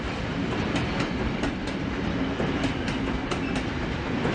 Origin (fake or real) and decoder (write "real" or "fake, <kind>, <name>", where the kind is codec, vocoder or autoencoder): real